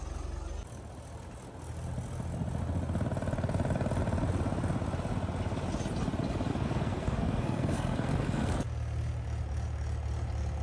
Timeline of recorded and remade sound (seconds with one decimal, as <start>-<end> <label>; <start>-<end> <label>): 0.0-6.5 recorded; 6.5-8.5 remade; 8.5-10.6 recorded

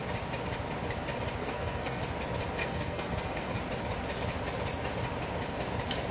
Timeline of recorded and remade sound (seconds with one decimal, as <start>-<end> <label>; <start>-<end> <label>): 0.0-1.4 recorded; 1.4-2.0 remade; 2.0-2.6 recorded; 2.6-3.6 remade; 3.6-6.1 recorded

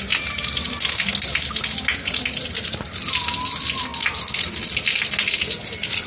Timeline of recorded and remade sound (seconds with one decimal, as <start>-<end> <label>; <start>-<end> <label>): 0.0-3.9 recorded; 3.9-4.9 remade; 4.9-6.1 recorded

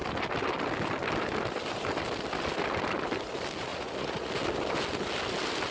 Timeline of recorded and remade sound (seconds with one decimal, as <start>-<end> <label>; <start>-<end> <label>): 0.0-3.7 recorded; 3.7-4.3 remade; 4.3-5.7 recorded